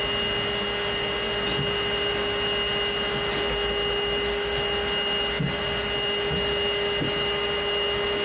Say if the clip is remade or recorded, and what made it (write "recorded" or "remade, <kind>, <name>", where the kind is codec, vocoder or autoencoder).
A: recorded